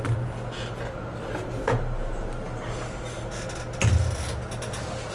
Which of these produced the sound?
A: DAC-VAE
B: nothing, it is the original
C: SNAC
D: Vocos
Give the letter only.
B